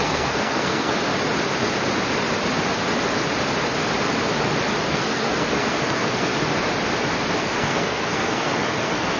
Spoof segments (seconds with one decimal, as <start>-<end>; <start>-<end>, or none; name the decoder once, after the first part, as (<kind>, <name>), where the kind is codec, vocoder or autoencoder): 0.0-1.1 (codec, SNAC); 4.9-6.3; 7.4-9.2